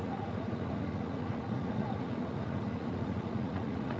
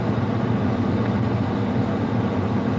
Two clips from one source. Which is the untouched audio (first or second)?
second